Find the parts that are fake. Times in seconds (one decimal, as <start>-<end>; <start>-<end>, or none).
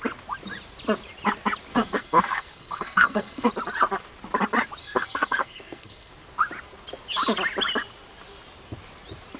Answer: 1.7-3.5; 4.8-6.1